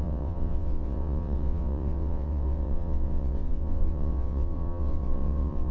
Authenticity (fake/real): fake